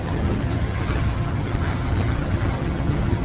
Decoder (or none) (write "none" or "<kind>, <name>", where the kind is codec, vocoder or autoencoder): vocoder, HiFi-GAN